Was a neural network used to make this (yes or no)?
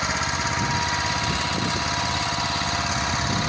no